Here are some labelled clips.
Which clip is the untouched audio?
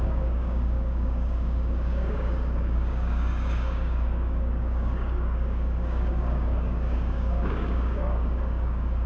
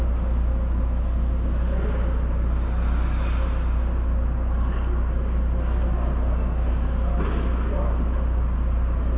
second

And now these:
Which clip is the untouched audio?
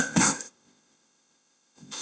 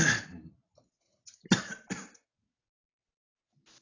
second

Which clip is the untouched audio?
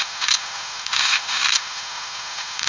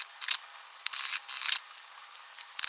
second